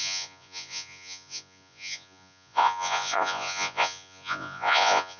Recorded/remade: remade